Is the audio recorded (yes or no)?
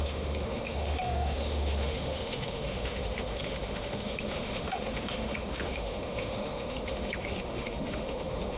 no